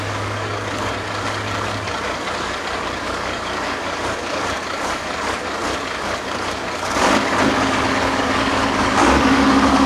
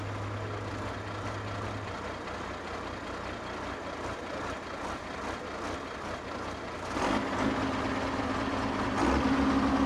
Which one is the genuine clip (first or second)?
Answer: second